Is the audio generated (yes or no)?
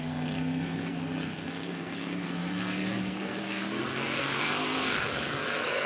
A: yes